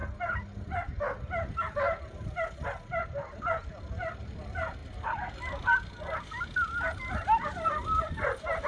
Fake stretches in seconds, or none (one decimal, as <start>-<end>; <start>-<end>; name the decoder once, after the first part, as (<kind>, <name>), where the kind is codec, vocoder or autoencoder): none